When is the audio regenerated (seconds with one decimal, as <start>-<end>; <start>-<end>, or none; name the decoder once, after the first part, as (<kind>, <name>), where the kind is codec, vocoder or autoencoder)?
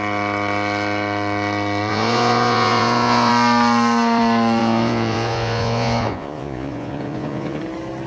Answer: 1.9-3.3 (vocoder, Vocos); 4.6-7.6